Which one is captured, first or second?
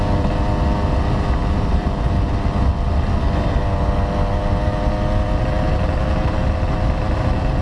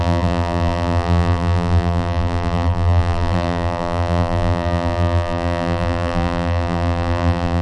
first